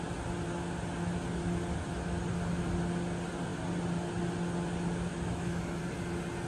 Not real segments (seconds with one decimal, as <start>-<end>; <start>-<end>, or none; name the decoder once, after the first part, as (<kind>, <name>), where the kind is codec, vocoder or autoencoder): 5.1-5.8 (autoencoder, DAC-VAE)